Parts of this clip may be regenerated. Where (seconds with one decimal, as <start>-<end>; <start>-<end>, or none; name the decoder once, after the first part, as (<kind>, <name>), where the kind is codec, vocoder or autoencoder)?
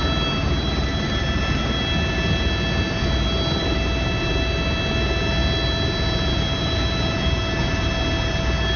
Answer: none